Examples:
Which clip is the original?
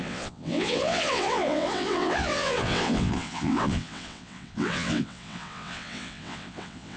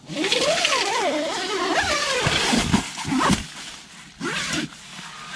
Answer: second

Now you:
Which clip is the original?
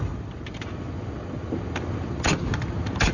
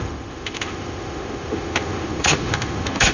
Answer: first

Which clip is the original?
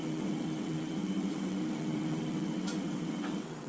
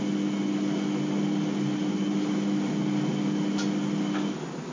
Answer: second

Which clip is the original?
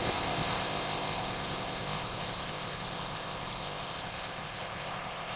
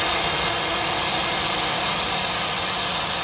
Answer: second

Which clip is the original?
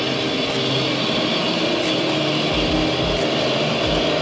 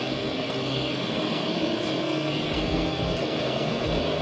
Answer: first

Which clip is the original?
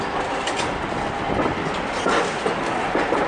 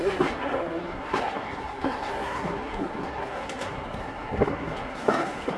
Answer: first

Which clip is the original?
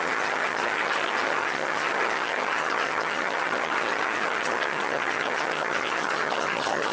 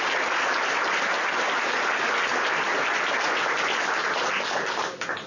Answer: second